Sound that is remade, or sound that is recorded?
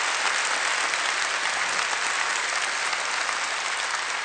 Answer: recorded